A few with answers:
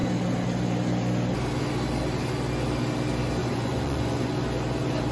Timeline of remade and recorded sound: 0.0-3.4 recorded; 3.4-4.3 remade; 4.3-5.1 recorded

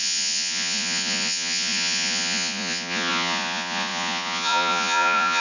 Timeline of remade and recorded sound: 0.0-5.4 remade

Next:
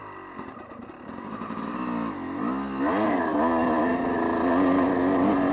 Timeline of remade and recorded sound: 0.0-5.5 recorded

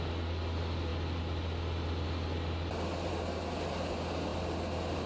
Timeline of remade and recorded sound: 0.0-5.1 recorded

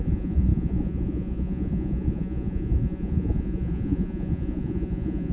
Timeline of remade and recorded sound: 0.0-5.3 remade